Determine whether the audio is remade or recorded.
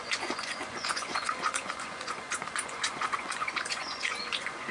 remade